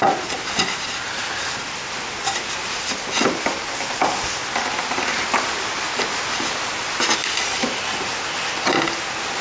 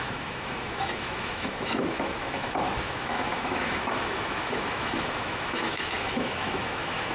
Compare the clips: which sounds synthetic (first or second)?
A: second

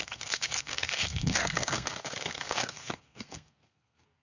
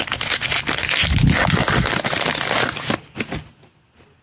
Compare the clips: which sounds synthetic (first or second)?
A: first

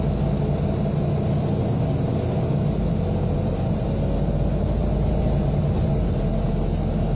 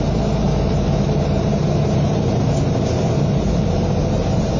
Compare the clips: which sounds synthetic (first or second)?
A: second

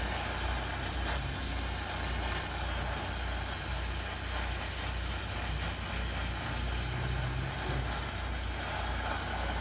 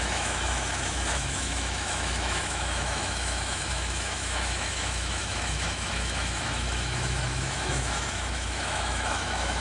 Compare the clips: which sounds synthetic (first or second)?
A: second